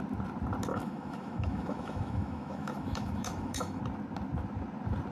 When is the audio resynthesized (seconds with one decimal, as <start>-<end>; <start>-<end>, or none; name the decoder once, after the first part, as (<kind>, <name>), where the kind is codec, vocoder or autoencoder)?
0.7-3.8 (autoencoder, DAC-VAE)